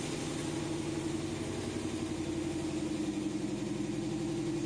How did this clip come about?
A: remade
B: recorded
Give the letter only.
B